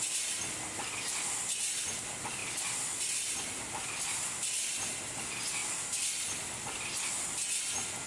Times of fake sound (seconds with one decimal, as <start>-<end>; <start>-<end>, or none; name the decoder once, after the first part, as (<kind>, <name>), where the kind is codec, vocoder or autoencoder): none